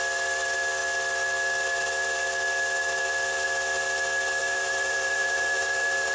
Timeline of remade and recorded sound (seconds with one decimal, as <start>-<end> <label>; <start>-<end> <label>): 0.0-4.4 recorded; 4.4-6.1 remade

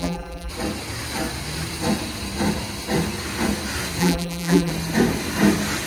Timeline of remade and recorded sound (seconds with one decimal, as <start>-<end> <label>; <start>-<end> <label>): 0.0-0.5 remade; 0.5-4.0 recorded; 4.0-4.7 remade; 4.7-5.9 recorded

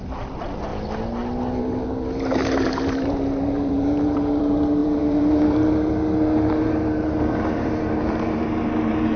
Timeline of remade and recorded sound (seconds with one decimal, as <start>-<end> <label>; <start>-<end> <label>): 0.0-0.7 remade; 0.7-1.6 recorded; 1.6-9.2 remade

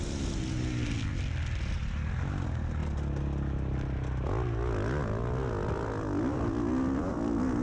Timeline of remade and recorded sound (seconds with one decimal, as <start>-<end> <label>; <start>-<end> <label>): 0.0-7.6 recorded

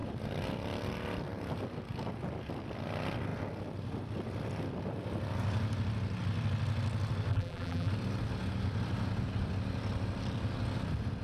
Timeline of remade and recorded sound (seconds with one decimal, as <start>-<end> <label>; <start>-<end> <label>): 0.0-7.3 recorded; 7.3-7.9 remade; 7.9-11.2 recorded

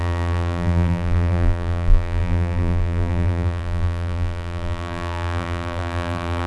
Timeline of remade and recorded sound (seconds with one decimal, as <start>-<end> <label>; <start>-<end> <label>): 0.0-6.5 remade

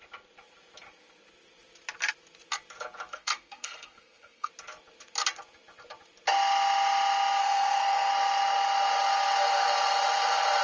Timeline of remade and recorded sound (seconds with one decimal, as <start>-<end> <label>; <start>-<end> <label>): 0.0-3.1 recorded; 3.1-4.5 remade; 4.5-7.4 recorded; 7.4-8.1 remade; 8.1-10.6 recorded

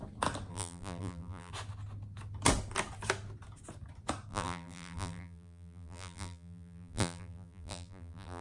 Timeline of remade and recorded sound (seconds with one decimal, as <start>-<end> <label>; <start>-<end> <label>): 0.0-0.5 recorded; 0.5-1.5 remade; 1.5-4.3 recorded; 4.3-8.4 remade